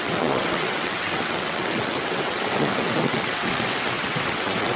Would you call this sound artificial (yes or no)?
yes